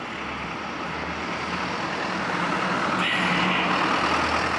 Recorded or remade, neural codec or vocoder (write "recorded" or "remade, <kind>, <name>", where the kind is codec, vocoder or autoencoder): recorded